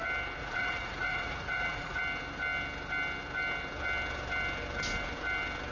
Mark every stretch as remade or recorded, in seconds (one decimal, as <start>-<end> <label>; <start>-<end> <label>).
0.0-0.4 recorded; 0.4-2.0 remade; 2.0-5.7 recorded